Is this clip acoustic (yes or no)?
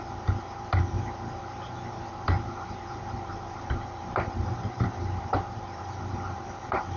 no